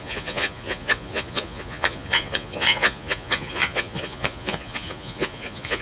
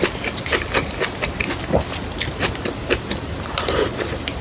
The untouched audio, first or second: second